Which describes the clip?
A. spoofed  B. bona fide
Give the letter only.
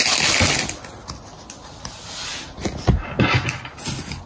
B